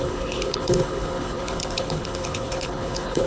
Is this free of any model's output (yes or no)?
no